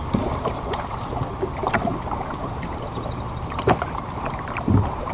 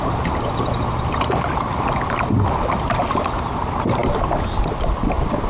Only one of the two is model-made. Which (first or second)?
first